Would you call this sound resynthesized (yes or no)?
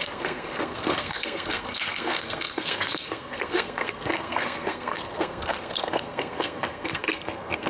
yes